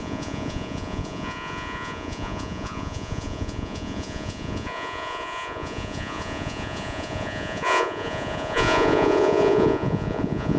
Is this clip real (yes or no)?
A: no